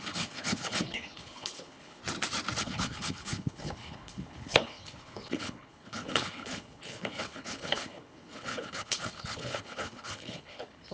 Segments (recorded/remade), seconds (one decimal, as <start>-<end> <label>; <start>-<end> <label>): 0.0-2.0 remade; 2.0-2.6 recorded; 2.6-10.9 remade